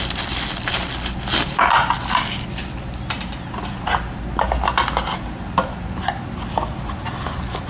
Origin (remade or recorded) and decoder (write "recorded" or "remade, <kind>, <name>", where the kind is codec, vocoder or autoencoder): recorded